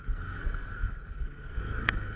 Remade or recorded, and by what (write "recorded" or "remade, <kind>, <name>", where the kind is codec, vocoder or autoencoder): remade, codec, SNAC